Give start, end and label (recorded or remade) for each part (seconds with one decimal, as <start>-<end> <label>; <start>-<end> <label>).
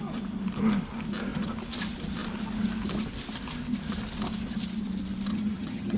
0.0-5.3 recorded; 5.3-6.0 remade